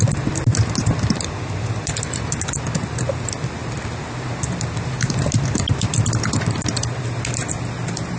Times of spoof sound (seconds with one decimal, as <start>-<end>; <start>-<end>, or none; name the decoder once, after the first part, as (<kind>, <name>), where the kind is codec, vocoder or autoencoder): 0.0-8.2 (vocoder, BigVGAN v2)